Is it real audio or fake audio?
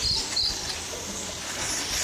real